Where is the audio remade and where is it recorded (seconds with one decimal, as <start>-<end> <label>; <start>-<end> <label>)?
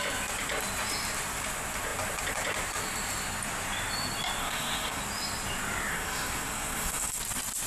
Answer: 0.0-4.4 recorded; 4.4-5.0 remade; 5.0-5.9 recorded; 5.9-7.2 remade; 7.2-7.7 recorded